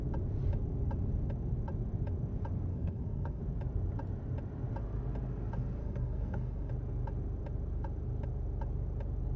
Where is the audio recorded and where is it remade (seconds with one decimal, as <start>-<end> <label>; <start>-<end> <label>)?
0.0-2.7 recorded; 2.7-3.4 remade; 3.4-5.8 recorded; 5.8-6.7 remade; 6.7-9.4 recorded